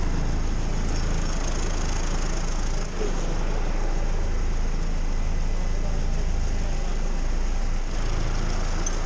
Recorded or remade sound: recorded